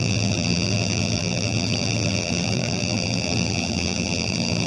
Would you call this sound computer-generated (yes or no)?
yes